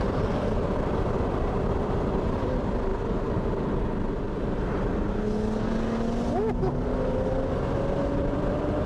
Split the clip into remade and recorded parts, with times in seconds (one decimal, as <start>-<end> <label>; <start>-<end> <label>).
0.0-2.9 remade; 2.9-8.1 recorded; 8.1-8.9 remade

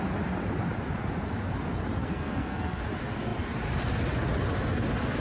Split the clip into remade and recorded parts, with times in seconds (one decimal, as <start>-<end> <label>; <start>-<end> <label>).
0.0-2.0 recorded; 2.0-2.8 remade; 2.8-5.2 recorded